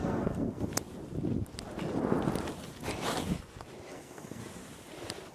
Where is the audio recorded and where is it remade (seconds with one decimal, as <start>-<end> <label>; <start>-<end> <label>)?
0.0-0.7 remade; 0.7-3.9 recorded; 3.9-4.4 remade; 4.4-5.3 recorded